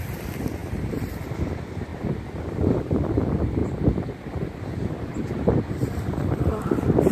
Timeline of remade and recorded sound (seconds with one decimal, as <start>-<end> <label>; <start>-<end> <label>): 0.0-1.9 remade; 1.9-2.4 recorded; 2.4-3.6 remade; 3.6-5.7 recorded; 5.7-7.1 remade